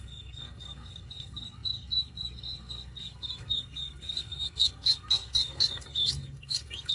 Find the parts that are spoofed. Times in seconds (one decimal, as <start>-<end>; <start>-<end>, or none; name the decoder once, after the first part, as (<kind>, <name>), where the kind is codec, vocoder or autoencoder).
0.0-6.9 (codec, SNAC)

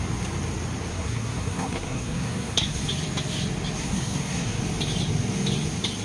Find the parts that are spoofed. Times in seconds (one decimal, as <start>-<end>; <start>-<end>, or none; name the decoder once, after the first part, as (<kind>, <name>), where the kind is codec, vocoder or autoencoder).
0.9-2.9 (codec, SNAC); 3.8-4.6

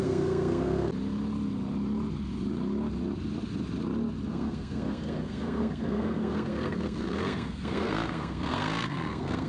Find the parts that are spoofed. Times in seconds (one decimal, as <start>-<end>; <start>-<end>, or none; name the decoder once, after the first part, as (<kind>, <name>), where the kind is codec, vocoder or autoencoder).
0.0-0.9 (codec, SNAC); 4.3-9.5

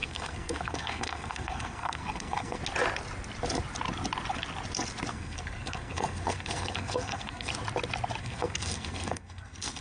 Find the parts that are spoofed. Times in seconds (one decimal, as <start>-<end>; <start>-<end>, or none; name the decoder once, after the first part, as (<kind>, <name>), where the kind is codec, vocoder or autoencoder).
0.0-2.6 (codec, SNAC); 5.1-7.5; 8.2-9.8

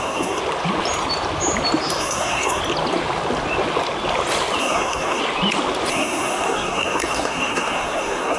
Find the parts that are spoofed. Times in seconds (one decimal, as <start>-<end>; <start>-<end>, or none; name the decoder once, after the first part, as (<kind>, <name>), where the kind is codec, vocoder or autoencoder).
0.0-0.4 (codec, SNAC); 2.0-2.6; 4.6-5.2; 5.9-8.4

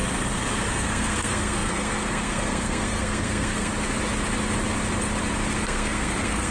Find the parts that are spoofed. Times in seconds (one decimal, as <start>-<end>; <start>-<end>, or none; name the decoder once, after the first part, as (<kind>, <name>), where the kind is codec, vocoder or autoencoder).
0.7-3.7 (codec, SNAC); 5.5-6.5